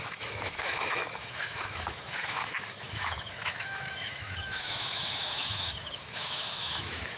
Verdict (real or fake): fake